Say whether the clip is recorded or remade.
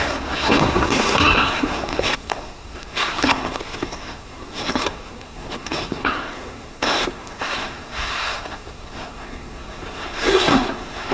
remade